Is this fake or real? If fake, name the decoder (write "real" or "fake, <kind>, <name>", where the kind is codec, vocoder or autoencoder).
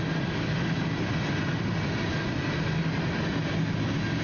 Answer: real